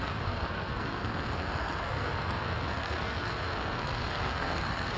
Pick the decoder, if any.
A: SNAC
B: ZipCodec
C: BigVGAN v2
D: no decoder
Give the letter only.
A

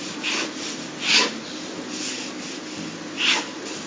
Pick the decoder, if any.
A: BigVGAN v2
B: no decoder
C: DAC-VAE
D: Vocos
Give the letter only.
B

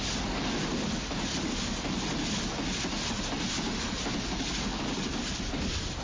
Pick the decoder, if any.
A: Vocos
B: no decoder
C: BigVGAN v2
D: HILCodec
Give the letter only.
B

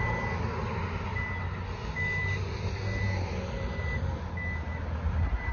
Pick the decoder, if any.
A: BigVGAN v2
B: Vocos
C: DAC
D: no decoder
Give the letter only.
D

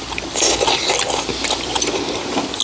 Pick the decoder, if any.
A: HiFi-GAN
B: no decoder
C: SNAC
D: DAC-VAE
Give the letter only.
B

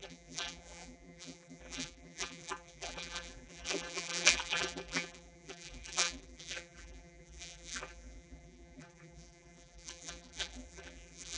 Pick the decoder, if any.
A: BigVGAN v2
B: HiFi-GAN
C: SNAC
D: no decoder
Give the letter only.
A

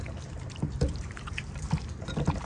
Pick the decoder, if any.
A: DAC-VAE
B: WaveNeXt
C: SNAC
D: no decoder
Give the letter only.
D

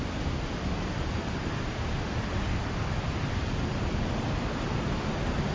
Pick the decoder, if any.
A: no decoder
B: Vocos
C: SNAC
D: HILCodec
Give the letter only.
A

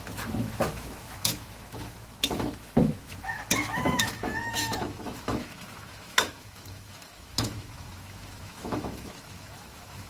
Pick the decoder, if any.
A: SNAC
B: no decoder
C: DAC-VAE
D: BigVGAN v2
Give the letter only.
C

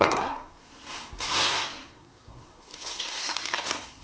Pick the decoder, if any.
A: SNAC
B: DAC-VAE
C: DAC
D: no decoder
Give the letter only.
A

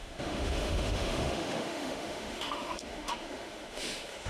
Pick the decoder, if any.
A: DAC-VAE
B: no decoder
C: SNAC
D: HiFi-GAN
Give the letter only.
A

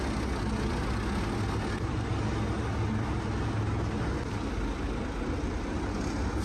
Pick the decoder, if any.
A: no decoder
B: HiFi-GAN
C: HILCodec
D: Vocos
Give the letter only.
A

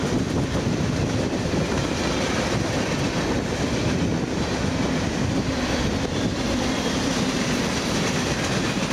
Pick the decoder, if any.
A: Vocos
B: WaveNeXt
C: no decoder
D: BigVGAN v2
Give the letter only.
C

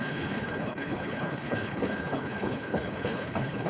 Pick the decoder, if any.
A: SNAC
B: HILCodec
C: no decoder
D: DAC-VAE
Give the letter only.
B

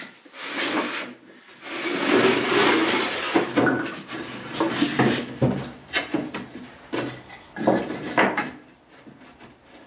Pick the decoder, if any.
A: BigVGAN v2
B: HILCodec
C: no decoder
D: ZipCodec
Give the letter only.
C